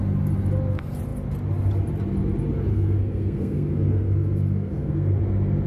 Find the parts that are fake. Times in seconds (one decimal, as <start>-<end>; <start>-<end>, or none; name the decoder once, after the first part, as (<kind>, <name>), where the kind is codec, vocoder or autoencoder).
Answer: 2.7-5.2 (codec, SNAC)